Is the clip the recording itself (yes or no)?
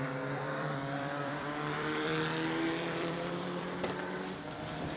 no